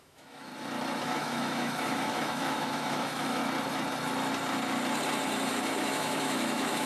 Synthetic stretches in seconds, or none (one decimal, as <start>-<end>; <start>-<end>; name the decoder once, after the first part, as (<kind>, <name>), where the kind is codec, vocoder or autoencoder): 0.0-0.5 (autoencoder, DAC-VAE); 1.0-3.4; 5.5-6.9